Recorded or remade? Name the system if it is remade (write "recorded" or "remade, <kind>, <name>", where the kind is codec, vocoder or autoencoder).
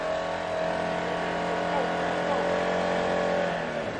recorded